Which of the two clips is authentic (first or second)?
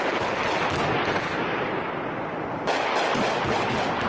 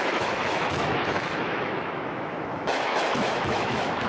first